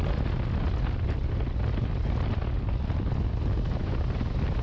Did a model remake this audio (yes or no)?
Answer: no